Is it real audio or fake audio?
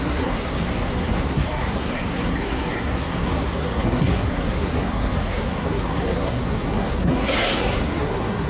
fake